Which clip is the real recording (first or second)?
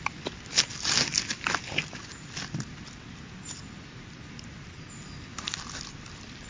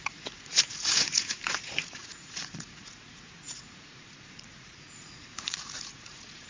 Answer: first